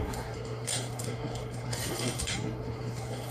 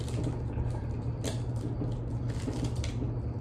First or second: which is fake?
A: first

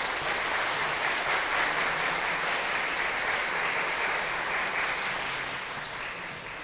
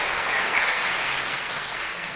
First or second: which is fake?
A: second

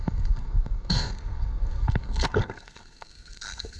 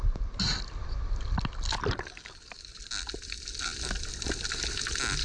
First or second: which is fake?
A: first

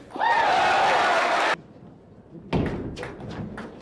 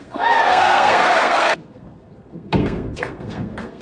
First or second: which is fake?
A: second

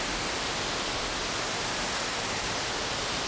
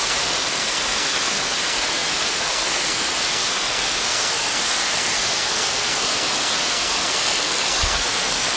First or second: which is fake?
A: second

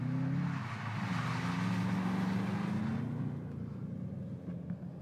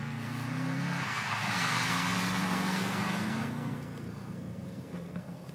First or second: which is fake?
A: second